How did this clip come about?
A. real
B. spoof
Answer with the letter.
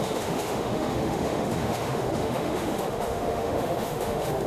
B